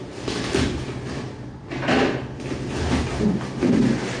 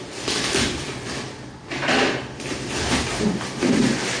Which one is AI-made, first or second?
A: second